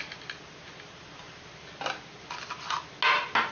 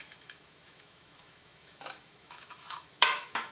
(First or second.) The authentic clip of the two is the first